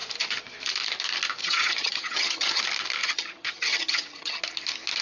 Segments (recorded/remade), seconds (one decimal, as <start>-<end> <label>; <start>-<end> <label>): 0.0-1.4 recorded; 1.4-2.6 remade; 2.6-3.0 recorded; 3.0-4.4 remade; 4.4-5.0 recorded